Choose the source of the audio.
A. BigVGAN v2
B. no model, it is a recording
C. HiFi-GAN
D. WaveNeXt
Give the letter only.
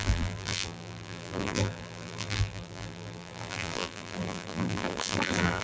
A